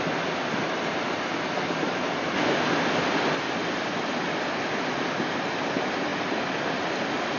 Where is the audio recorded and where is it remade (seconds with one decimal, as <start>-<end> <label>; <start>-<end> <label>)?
0.0-7.4 recorded